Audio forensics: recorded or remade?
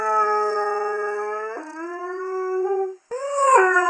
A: remade